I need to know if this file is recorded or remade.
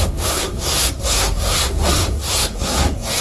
remade